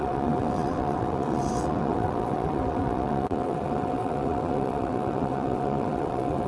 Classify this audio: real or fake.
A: fake